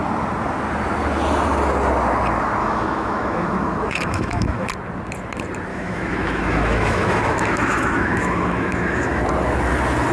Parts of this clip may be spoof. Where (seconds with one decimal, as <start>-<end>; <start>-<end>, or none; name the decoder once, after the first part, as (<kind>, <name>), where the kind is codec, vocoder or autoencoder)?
2.6-4.7 (autoencoder, DAC-VAE); 5.7-9.2